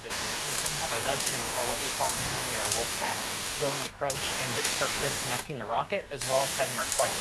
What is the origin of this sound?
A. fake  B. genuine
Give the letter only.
A